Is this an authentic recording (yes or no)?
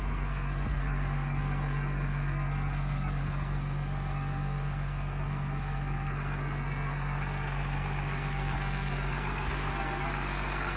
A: no